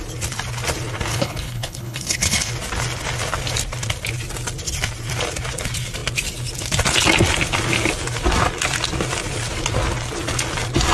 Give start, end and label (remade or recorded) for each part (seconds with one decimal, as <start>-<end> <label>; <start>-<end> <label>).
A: 0.0-1.1 recorded; 1.1-2.5 remade; 2.5-10.9 recorded